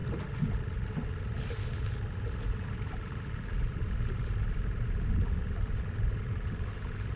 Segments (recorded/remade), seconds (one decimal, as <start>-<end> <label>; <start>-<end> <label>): 0.0-7.2 recorded